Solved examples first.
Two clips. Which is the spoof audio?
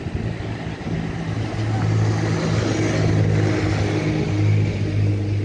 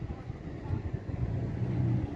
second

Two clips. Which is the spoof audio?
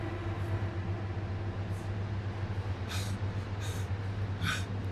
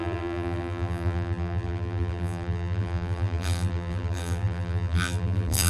second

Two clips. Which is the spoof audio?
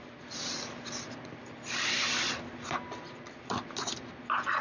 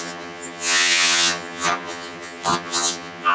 second